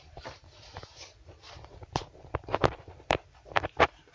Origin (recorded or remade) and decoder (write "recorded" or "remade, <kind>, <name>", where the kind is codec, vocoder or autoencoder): remade, vocoder, BigVGAN v2